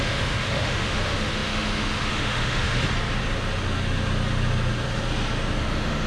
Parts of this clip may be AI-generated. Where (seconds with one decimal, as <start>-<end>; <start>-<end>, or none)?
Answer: 0.0-2.8; 5.6-6.1